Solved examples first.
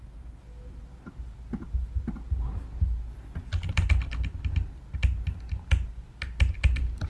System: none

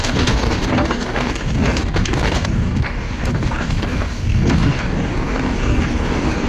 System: codec, DAC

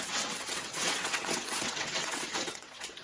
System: vocoder, WaveNeXt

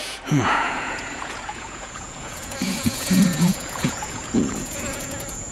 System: vocoder, Vocos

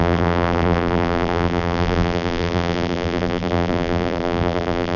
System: vocoder, BigVGAN v2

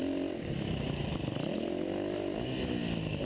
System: none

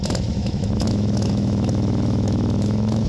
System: autoencoder, DAC-VAE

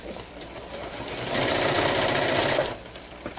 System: vocoder, BigVGAN v2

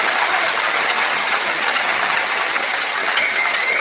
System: vocoder, HiFi-GAN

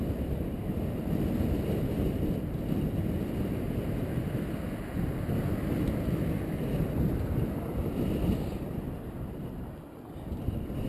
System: none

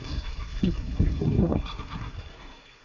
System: codec, SNAC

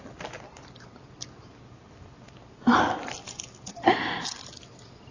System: none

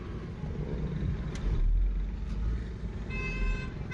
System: none